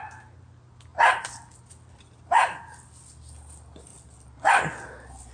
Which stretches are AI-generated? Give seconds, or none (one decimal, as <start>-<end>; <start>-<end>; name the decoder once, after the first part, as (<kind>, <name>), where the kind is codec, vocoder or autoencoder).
none